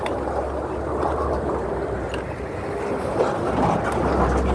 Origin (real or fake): real